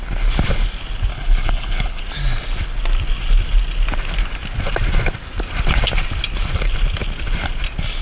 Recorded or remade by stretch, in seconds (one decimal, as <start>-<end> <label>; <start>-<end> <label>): 0.0-1.1 recorded; 1.1-2.0 remade; 2.0-8.0 recorded